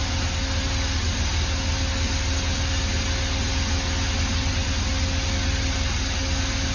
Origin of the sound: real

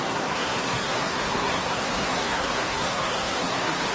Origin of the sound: fake